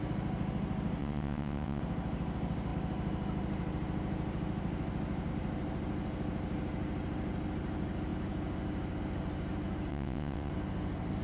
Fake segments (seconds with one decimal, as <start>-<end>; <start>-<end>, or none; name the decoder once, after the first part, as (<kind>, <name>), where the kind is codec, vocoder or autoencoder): 1.0-1.8 (vocoder, WaveNeXt); 9.9-10.5